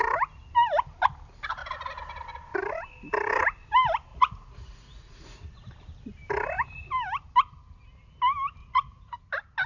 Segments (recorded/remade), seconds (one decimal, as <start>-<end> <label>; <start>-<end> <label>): 0.0-4.1 recorded; 4.1-5.7 remade; 5.7-8.6 recorded; 8.6-9.2 remade; 9.2-9.7 recorded